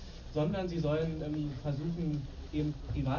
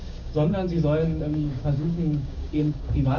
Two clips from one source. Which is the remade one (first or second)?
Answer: second